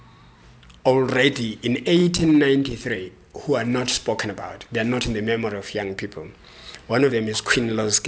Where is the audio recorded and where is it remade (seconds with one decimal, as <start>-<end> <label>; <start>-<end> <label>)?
0.0-6.6 recorded; 6.6-7.1 remade; 7.1-8.1 recorded